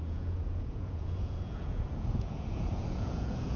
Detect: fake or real fake